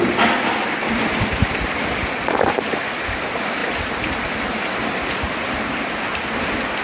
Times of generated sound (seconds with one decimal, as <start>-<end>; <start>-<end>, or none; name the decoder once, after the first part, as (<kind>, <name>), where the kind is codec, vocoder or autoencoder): none

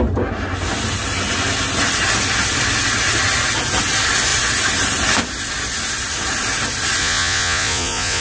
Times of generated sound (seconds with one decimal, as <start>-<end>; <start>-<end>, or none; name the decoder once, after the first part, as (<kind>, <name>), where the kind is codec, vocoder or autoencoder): 7.0-8.2 (vocoder, Vocos)

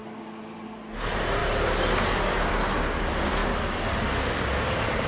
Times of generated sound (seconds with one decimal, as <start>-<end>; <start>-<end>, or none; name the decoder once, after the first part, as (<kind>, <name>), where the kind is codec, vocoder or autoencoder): none

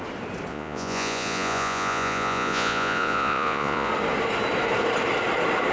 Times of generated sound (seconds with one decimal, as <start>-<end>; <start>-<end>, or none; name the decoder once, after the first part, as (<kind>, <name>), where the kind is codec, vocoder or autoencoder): 0.5-3.9 (vocoder, Vocos)

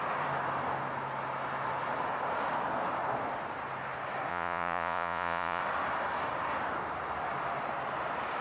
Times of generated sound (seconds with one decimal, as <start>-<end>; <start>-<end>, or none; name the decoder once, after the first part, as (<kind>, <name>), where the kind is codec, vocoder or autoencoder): 4.3-5.6 (vocoder, Vocos)

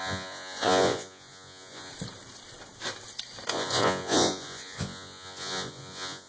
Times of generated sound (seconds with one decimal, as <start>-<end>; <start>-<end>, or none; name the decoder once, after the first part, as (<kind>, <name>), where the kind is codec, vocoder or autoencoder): 0.0-1.9 (vocoder, Vocos); 3.5-6.3